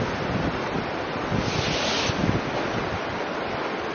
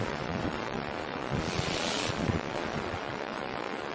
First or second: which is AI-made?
second